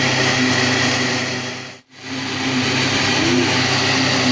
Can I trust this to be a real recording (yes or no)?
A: yes